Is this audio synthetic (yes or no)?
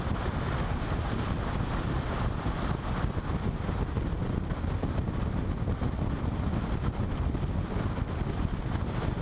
no